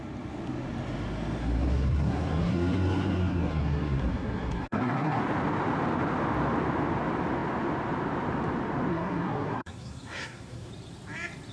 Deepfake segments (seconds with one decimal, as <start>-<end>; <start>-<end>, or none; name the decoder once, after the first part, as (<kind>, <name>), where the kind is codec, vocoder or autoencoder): 1.4-5.2 (codec, SNAC); 8.9-10.7